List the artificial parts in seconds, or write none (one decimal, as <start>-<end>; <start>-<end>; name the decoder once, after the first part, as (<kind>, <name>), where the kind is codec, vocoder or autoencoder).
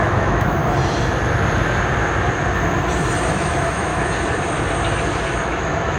0.0-0.6 (autoencoder, DAC-VAE); 3.3-3.9; 5.4-6.0